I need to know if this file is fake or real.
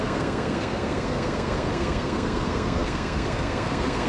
fake